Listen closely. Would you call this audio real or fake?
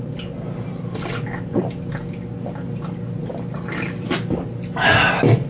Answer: real